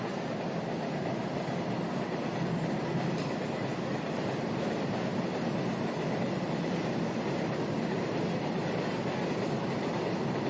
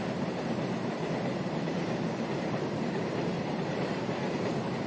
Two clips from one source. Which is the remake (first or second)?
second